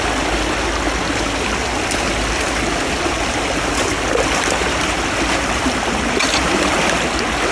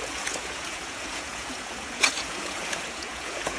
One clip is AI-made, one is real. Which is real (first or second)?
first